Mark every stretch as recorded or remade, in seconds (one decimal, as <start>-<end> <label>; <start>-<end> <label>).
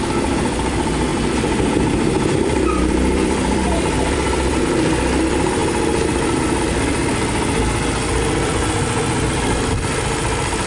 0.0-1.1 recorded; 1.1-4.6 remade; 4.6-5.6 recorded; 5.6-6.6 remade; 6.6-10.7 recorded